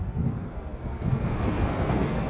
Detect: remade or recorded remade